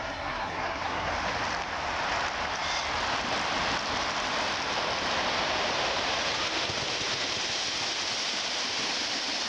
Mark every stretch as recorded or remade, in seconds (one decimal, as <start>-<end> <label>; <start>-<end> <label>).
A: 0.0-1.1 remade; 1.1-9.5 recorded